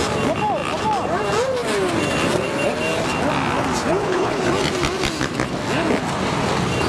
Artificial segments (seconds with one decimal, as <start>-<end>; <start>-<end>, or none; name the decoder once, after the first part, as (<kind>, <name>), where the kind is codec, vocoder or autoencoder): 3.8-4.4 (codec, HILCodec)